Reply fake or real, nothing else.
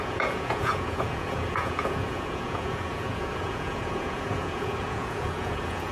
fake